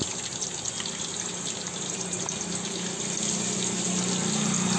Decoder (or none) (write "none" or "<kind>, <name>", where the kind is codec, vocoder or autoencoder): none